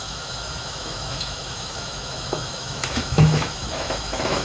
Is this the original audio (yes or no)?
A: no